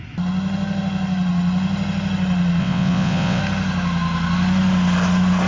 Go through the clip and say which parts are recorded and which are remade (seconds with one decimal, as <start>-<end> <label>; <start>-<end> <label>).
0.0-2.6 recorded; 2.6-3.4 remade; 3.4-5.5 recorded